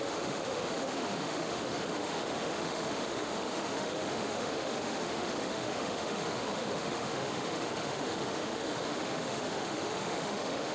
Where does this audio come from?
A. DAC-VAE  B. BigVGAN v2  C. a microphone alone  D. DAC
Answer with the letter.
A